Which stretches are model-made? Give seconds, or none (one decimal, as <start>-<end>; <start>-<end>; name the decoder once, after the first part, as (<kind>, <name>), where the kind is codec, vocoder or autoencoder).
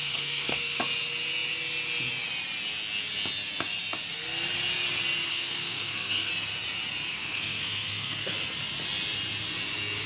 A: 0.0-0.8 (codec, SNAC); 5.3-6.3; 7.1-8.3